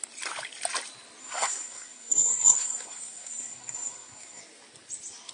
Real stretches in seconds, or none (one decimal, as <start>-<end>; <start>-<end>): 0.0-1.2; 4.4-5.3